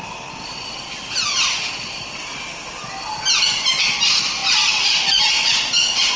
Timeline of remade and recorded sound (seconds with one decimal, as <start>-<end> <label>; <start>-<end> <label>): 0.0-6.2 recorded